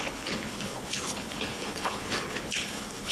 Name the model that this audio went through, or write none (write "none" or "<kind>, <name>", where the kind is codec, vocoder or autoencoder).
codec, HILCodec